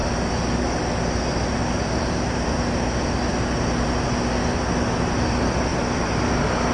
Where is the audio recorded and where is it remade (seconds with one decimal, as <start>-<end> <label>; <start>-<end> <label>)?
0.0-5.7 recorded; 5.7-6.2 remade; 6.2-6.7 recorded